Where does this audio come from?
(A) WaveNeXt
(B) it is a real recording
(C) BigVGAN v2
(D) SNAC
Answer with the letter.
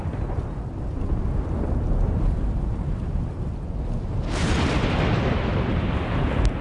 B